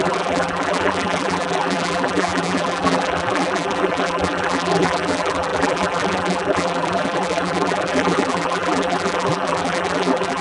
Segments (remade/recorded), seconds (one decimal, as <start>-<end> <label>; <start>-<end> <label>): 0.0-10.4 remade